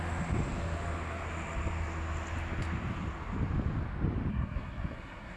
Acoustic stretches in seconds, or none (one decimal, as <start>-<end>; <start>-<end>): 0.0-4.3